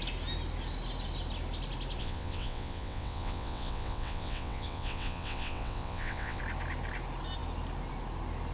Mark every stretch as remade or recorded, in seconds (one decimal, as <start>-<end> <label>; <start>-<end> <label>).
0.0-2.0 recorded; 2.0-6.4 remade; 6.4-8.5 recorded

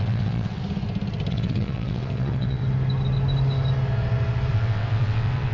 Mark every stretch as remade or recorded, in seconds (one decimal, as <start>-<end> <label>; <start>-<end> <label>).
0.0-0.6 remade; 0.6-1.3 recorded; 1.3-2.6 remade; 2.6-4.5 recorded; 4.5-5.5 remade

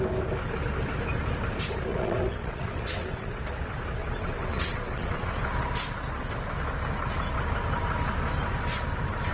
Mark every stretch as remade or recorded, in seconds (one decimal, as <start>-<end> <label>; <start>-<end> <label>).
0.0-1.9 recorded; 1.9-3.4 remade; 3.4-4.0 recorded; 4.0-5.3 remade; 5.3-9.3 recorded